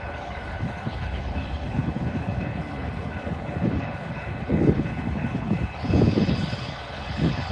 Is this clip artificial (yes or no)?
yes